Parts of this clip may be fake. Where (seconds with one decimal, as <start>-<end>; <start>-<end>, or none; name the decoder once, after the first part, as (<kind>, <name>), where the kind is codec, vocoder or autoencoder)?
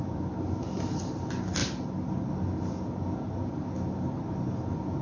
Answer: none